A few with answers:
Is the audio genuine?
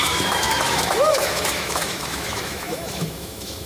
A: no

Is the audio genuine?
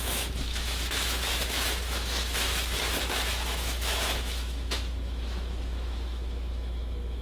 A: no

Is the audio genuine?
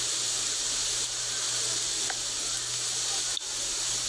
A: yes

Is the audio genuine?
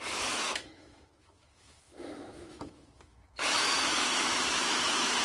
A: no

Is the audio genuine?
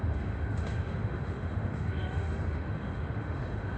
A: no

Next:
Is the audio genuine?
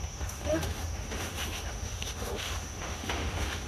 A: no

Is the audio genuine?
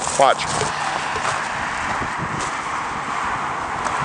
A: yes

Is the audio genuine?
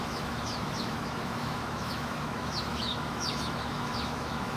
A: no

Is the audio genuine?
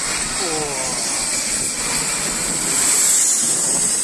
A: yes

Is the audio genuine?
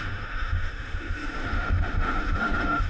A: no